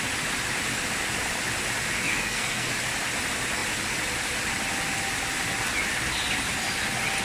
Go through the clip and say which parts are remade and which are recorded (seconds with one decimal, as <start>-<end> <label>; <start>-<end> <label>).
0.0-2.0 recorded; 2.0-2.7 remade; 2.7-7.2 recorded